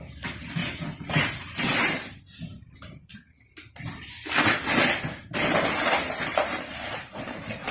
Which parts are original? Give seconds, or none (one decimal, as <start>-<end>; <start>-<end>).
0.0-0.6; 4.2-7.7